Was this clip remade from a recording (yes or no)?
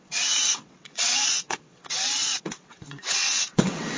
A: yes